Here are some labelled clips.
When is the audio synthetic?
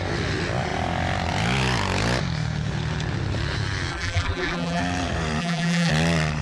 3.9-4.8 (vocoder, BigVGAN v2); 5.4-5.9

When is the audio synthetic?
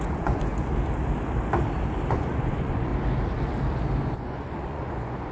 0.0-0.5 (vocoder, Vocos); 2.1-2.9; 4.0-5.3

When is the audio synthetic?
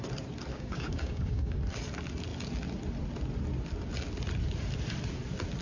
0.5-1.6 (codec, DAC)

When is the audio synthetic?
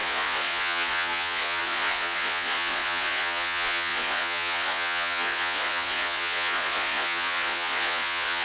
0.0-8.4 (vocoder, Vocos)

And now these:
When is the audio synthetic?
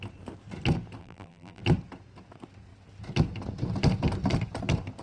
1.0-1.6 (vocoder, BigVGAN v2)